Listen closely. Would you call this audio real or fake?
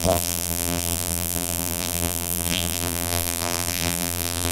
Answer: fake